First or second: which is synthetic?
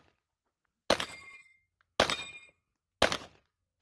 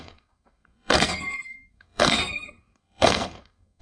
second